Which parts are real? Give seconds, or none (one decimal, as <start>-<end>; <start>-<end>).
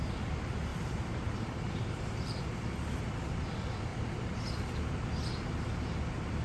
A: 0.0-0.7; 2.4-3.9; 4.5-6.4